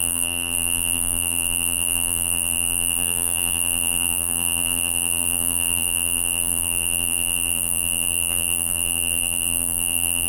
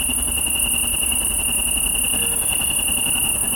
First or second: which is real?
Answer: second